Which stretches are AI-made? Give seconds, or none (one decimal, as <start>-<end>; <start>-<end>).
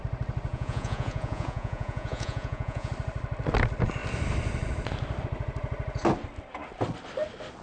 0.5-2.9